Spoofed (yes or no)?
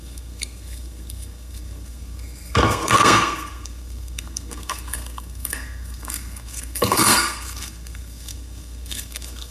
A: yes